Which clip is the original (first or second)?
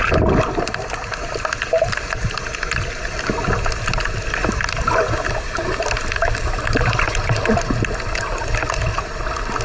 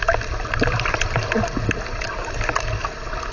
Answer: second